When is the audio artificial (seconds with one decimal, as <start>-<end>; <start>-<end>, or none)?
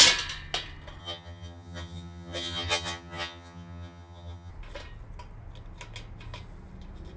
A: 1.0-4.5